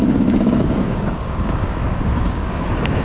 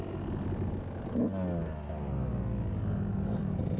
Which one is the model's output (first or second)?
first